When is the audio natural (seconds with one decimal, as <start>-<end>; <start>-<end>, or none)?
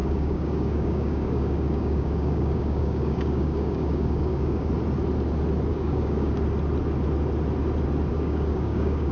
4.7-5.7; 6.3-8.1